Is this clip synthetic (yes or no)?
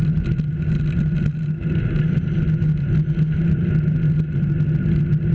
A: no